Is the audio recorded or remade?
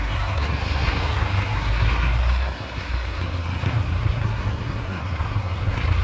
remade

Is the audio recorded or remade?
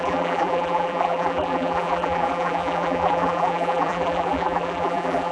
remade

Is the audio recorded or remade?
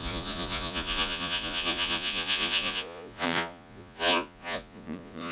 remade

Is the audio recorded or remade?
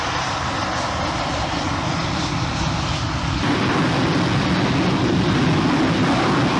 recorded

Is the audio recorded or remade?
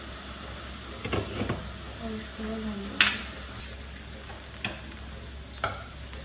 recorded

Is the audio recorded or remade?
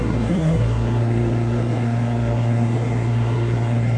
remade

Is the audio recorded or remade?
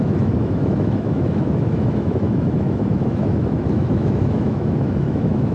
remade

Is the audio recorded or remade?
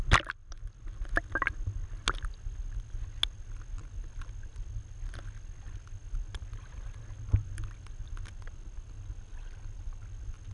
recorded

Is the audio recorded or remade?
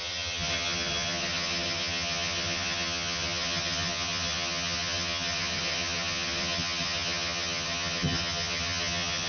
remade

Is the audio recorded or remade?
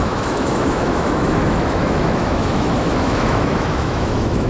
remade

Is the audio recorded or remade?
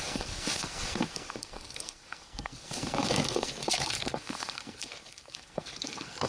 remade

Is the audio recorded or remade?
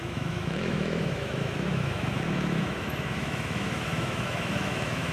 remade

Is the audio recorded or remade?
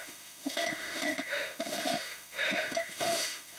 remade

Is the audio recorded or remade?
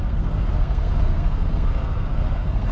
remade